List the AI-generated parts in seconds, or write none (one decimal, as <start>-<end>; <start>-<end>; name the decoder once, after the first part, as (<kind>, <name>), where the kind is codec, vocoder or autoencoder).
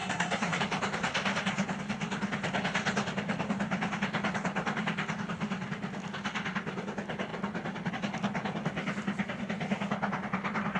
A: 0.0-0.6 (codec, SNAC)